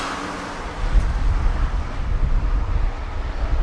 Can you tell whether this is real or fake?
real